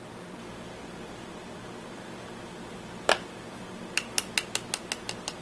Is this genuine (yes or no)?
yes